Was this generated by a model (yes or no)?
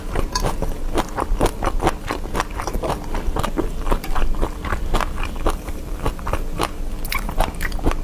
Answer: no